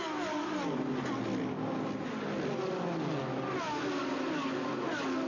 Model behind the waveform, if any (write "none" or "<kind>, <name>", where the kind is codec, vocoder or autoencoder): none